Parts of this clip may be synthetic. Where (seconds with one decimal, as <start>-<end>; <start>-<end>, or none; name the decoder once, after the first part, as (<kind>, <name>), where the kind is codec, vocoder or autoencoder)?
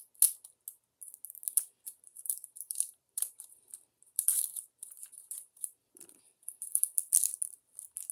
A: 2.1-6.8 (vocoder, BigVGAN v2)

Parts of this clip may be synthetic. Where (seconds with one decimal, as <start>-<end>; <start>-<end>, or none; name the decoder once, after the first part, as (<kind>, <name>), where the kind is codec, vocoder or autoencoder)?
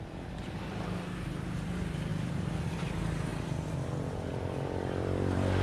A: 0.0-2.1 (vocoder, BigVGAN v2); 2.8-3.3; 4.3-5.6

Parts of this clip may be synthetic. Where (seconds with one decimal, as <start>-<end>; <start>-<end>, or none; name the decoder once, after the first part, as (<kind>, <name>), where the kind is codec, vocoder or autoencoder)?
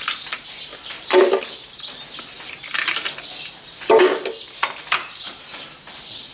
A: none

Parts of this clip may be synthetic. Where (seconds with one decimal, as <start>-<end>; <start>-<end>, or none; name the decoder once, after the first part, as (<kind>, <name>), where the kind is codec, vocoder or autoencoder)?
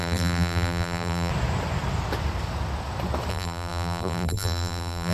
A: 0.0-1.3 (vocoder, BigVGAN v2); 3.3-5.1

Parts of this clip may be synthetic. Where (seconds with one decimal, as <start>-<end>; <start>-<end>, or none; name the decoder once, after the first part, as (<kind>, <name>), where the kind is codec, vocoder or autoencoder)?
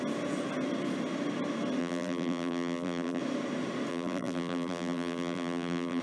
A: 1.8-3.2 (vocoder, BigVGAN v2); 3.9-6.0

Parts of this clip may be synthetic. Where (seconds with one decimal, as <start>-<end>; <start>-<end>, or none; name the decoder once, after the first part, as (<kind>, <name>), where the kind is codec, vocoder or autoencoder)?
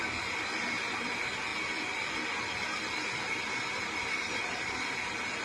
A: none